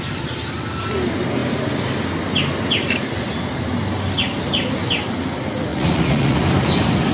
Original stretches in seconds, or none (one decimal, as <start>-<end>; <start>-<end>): 0.0-5.7; 6.4-7.1